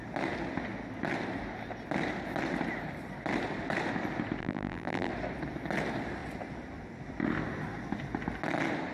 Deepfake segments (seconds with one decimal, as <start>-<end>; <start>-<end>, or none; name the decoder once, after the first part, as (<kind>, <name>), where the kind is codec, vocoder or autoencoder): 4.4-5.1 (vocoder, BigVGAN v2)